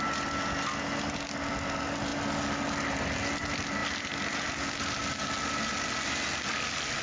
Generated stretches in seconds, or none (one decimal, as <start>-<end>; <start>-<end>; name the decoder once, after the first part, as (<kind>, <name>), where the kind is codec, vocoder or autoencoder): none